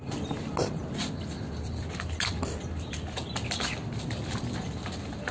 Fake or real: real